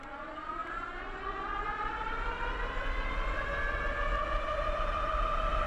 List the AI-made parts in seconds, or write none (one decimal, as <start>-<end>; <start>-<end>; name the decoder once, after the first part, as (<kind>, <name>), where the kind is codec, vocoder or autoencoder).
none

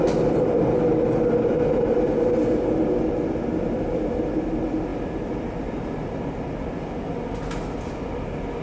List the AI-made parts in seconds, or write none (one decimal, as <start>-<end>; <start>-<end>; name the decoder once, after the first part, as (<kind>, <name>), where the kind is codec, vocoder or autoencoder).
none

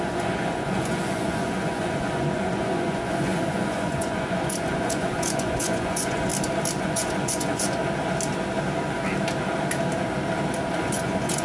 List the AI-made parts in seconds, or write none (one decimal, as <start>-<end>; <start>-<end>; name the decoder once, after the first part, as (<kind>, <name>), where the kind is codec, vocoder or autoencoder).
0.0-6.3 (vocoder, Vocos); 6.8-7.8; 10.8-11.4

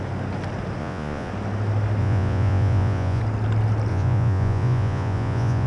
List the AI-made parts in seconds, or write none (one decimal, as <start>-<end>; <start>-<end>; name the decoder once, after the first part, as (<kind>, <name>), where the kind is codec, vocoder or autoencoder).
0.8-1.3 (vocoder, Vocos); 2.0-3.2; 3.9-5.7

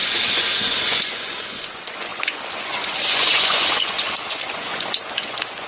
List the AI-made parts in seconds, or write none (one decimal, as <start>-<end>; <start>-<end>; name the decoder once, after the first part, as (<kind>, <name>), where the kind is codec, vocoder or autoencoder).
0.0-5.7 (vocoder, Vocos)

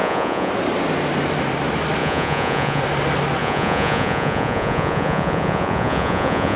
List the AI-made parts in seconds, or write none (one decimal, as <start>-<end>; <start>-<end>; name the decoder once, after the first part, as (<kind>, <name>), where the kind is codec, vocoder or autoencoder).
0.0-0.5 (vocoder, Vocos); 2.0-2.8; 3.4-6.6